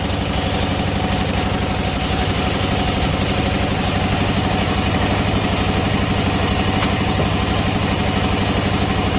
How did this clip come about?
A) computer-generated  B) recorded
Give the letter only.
B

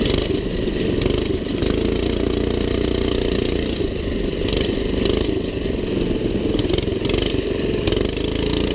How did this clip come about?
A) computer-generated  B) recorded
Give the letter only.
B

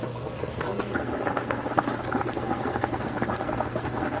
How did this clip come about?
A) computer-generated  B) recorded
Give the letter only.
A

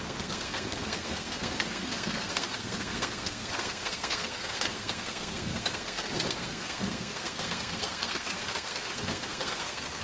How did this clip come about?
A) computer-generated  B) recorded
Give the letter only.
A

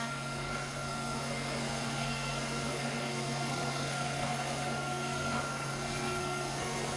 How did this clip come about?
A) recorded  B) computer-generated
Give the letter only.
B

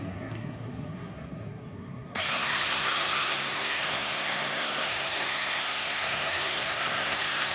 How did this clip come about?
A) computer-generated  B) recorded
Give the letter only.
A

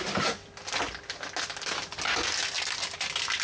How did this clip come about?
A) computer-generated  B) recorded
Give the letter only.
B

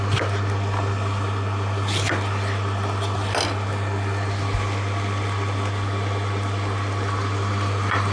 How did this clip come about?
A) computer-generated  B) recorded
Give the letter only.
B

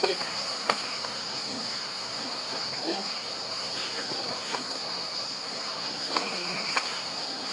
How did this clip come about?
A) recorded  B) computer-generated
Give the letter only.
B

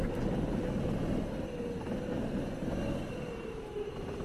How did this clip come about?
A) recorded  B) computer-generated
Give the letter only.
A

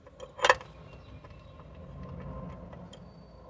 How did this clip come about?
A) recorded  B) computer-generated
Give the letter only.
A